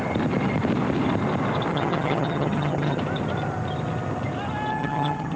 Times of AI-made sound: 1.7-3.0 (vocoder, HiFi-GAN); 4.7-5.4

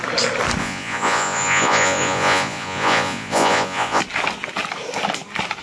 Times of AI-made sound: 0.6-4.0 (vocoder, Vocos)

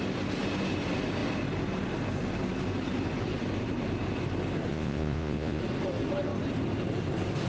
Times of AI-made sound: 4.7-5.6 (vocoder, Vocos)

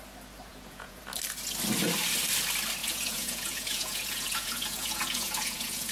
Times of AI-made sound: 0.5-1.0 (vocoder, Vocos); 2.8-5.9

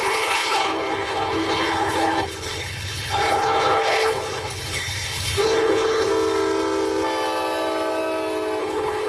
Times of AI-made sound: 0.0-6.1 (codec, HILCodec); 8.6-9.1

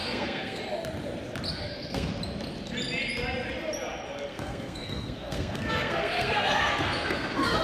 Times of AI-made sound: 0.0-0.6 (codec, SNAC); 1.5-2.1; 4.3-7.6

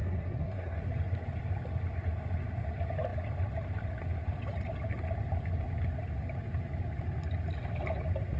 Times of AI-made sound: 0.0-0.8 (codec, SNAC)